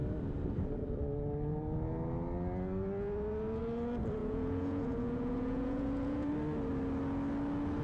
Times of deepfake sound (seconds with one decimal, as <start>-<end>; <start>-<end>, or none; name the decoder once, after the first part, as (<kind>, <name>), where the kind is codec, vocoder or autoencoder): 4.2-6.3 (vocoder, Vocos)